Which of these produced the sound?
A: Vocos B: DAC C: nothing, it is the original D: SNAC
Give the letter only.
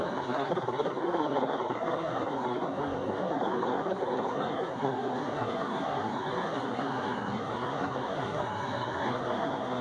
D